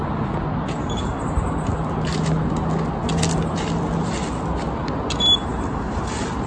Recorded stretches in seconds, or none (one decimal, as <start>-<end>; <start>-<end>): 0.0-6.5

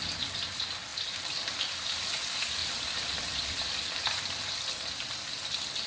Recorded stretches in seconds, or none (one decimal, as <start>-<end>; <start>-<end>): 0.0-2.6; 4.6-5.9

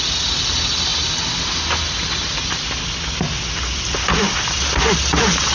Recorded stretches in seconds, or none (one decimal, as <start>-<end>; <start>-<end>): 0.0-5.5

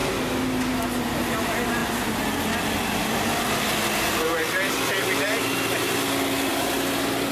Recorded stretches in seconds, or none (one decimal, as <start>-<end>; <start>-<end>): 0.0-7.3

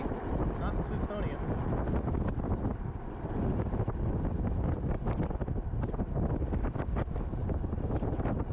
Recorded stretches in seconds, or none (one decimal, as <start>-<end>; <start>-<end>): 0.0-8.5

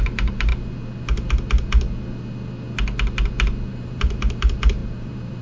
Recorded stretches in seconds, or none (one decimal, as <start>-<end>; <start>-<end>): 0.5-3.7

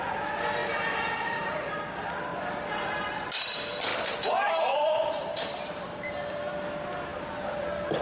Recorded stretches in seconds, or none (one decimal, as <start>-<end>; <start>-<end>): 0.0-0.6; 1.7-2.3; 3.2-3.9; 6.4-8.0